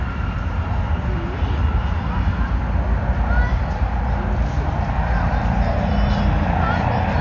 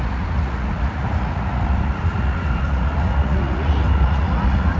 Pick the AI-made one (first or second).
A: second